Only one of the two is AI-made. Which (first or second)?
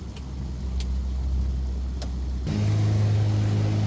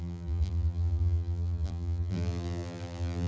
second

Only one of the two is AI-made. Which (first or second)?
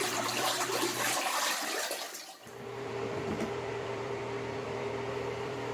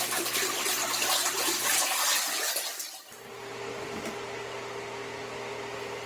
first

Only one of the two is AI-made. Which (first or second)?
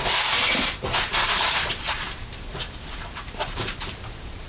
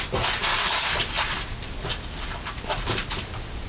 first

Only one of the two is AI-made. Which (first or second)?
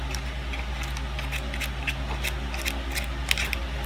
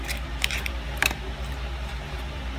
second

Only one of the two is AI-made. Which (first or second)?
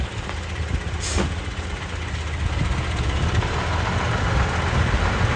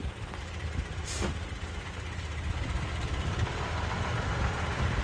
second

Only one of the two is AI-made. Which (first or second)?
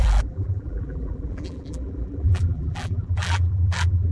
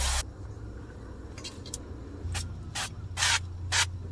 first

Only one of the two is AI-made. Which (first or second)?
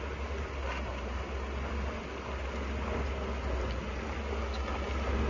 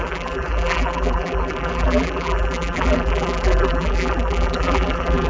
second